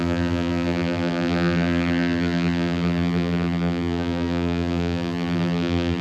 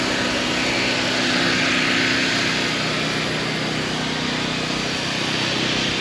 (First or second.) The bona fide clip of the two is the second